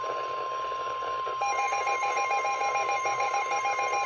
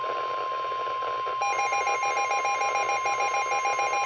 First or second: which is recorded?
second